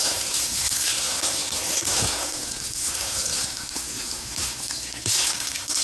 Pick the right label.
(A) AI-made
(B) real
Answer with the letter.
A